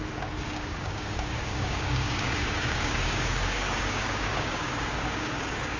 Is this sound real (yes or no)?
no